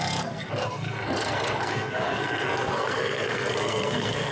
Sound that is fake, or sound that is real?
fake